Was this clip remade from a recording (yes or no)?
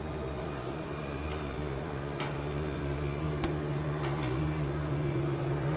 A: yes